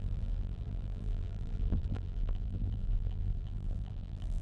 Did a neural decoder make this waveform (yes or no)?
yes